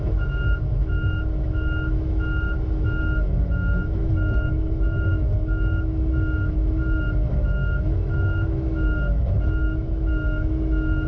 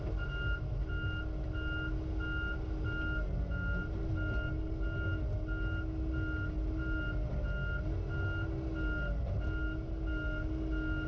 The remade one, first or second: first